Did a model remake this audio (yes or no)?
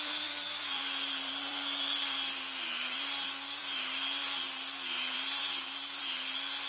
yes